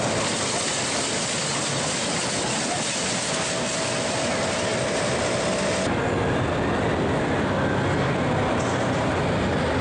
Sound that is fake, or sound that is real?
real